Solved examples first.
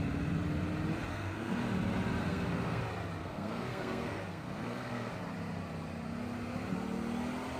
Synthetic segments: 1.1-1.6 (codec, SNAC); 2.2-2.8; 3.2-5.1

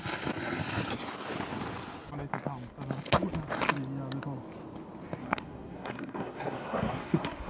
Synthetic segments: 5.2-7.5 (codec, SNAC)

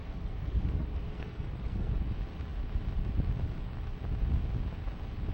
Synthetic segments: 0.0-1.9 (codec, SNAC)

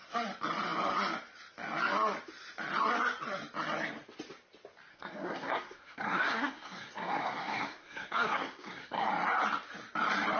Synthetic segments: 4.9-9.1 (codec, SNAC)